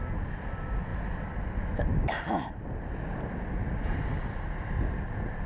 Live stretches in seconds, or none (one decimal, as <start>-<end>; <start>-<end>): 0.0-5.5